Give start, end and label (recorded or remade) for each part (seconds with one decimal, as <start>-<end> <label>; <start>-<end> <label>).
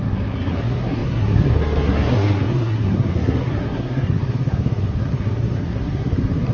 0.0-6.5 remade